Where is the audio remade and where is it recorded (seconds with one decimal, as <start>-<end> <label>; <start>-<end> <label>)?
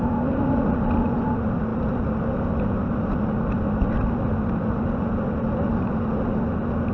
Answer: 0.0-6.9 recorded